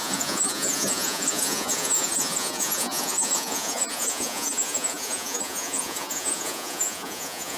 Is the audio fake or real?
fake